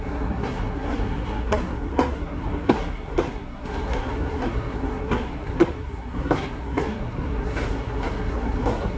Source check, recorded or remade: remade